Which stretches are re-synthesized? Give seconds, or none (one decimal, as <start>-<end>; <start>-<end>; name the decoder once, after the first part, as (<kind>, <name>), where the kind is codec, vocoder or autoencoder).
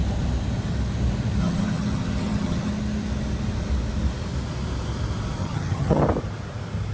1.4-2.7 (vocoder, HiFi-GAN); 5.4-6.0